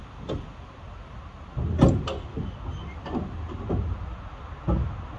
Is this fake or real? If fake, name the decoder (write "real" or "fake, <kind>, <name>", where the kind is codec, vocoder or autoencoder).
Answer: real